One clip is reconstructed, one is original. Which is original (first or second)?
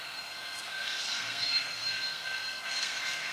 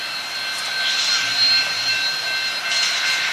second